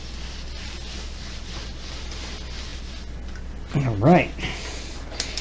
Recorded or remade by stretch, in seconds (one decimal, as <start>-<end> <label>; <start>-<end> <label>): 0.0-5.4 recorded